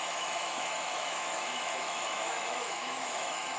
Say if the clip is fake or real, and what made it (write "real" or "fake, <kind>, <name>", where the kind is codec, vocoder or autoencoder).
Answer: fake, autoencoder, DAC-VAE